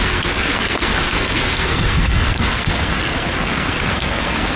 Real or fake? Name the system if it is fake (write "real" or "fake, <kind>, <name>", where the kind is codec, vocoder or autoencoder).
fake, codec, SNAC